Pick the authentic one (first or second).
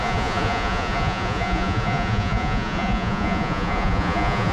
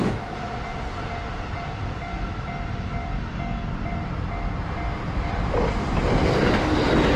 second